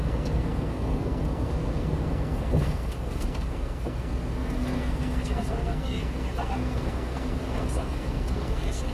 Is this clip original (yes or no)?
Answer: no